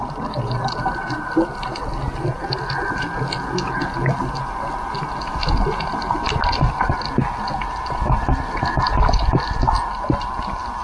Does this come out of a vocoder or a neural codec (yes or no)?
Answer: no